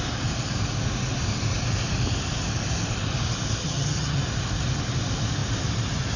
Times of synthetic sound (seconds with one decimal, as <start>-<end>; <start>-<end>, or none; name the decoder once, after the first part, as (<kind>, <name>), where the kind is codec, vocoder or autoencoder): 3.6-4.2 (vocoder, HiFi-GAN)